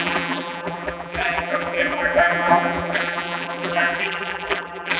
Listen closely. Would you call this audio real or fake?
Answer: fake